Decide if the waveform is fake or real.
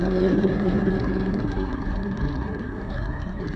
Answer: fake